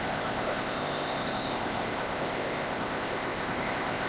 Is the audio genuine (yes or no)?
no